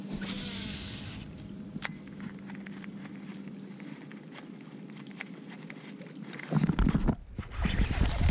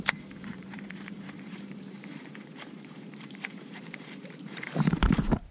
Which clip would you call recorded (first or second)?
first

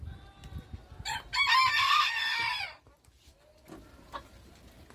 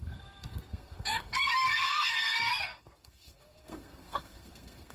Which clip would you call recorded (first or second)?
first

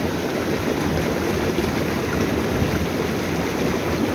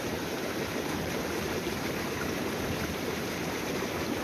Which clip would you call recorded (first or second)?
first